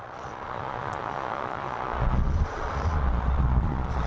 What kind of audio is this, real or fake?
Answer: fake